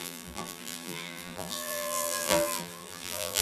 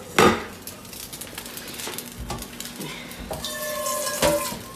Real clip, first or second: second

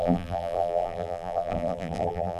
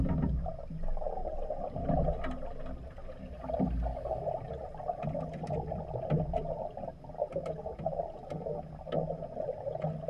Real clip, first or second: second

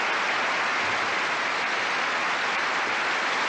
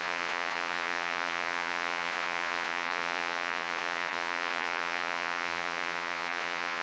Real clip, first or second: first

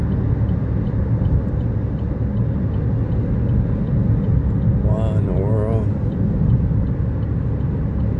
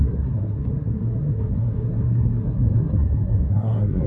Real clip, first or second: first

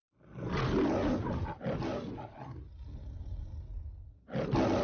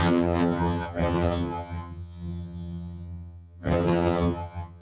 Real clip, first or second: first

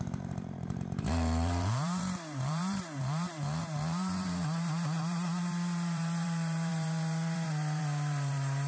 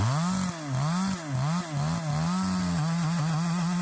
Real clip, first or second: second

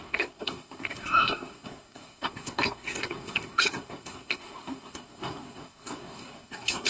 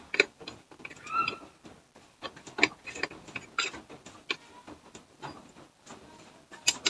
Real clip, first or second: second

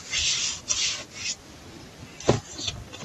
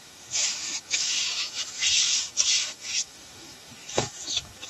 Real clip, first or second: first